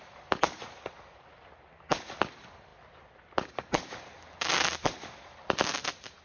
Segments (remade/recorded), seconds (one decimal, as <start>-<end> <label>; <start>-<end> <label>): 0.0-6.2 recorded